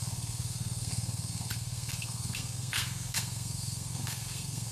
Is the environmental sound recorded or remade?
remade